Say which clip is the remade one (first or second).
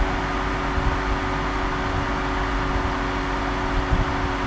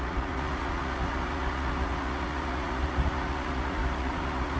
second